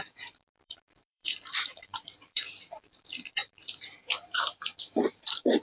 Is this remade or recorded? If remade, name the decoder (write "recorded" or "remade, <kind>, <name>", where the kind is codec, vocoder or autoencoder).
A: remade, vocoder, BigVGAN v2